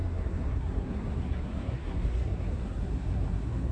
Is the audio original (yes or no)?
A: no